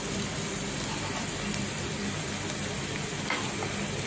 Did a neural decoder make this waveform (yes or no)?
no